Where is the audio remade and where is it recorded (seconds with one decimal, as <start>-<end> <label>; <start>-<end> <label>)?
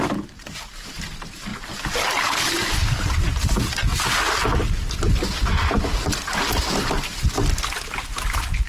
0.0-8.7 recorded